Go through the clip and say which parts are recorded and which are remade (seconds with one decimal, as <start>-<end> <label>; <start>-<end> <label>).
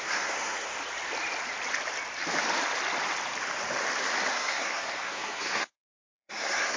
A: 0.0-0.7 remade; 0.7-4.3 recorded; 4.3-6.8 remade